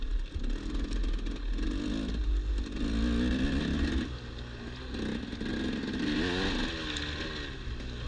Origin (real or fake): real